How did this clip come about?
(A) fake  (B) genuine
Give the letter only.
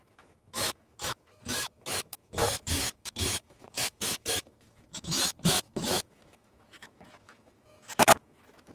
A